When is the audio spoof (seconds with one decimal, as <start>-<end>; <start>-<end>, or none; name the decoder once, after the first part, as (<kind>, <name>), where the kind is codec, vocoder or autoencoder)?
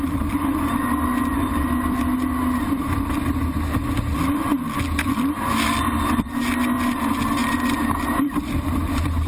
7.4-9.3 (vocoder, BigVGAN v2)